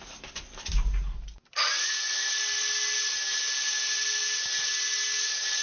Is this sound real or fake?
real